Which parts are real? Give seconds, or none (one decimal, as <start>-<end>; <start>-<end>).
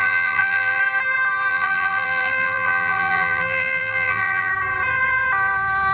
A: 0.8-1.5; 4.5-5.9